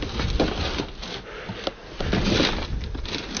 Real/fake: real